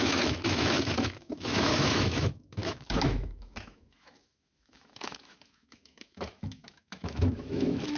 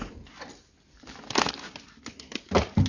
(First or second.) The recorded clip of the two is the second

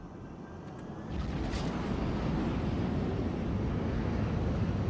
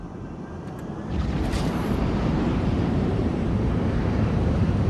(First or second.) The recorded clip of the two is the first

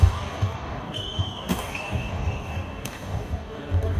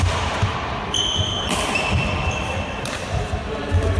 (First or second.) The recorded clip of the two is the second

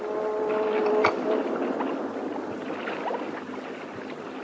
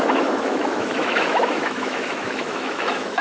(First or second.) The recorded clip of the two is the first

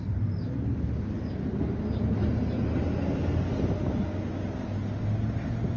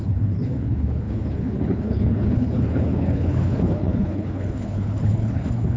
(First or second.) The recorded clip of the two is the first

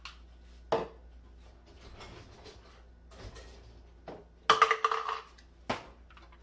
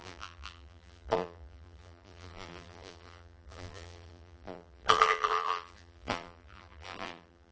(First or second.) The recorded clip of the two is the first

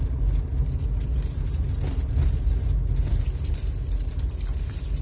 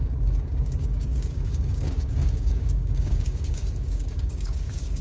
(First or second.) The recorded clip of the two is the first